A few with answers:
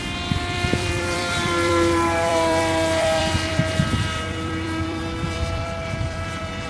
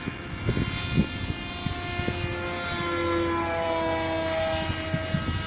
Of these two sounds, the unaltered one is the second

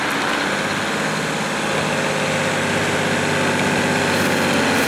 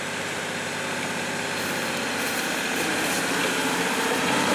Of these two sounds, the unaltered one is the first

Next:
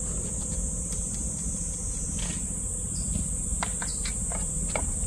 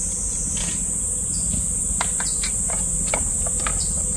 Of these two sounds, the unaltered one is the second